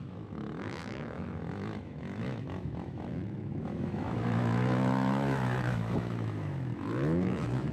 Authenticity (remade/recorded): remade